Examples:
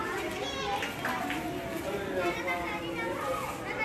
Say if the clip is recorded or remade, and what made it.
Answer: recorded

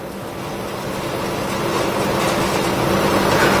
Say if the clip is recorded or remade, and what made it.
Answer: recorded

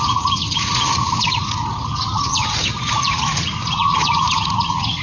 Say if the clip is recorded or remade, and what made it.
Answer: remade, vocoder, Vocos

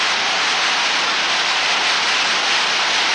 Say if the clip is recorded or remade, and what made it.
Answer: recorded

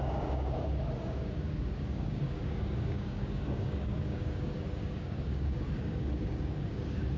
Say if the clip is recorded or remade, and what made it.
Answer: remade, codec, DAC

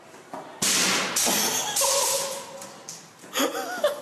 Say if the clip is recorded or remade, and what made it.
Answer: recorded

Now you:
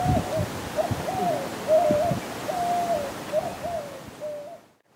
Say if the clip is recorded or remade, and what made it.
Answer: recorded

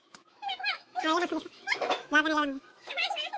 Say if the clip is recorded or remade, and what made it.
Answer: remade, autoencoder, DAC-VAE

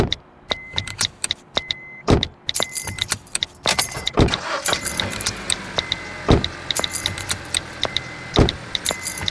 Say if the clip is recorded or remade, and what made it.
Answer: remade, vocoder, BigVGAN v2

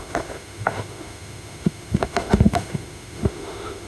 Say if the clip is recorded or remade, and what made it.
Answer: remade, autoencoder, DAC-VAE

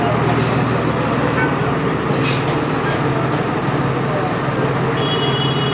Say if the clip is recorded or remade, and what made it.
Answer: recorded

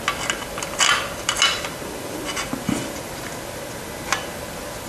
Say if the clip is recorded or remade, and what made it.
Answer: recorded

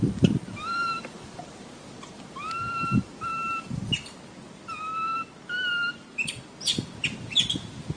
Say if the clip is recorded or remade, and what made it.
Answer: recorded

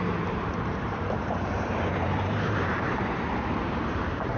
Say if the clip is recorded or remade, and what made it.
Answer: remade, vocoder, BigVGAN v2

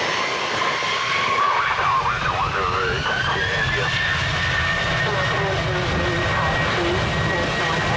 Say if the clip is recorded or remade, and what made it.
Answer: recorded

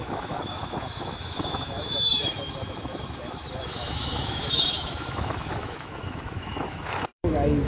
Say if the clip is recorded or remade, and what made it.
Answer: remade, autoencoder, DAC-VAE